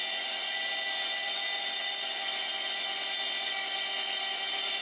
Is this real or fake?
real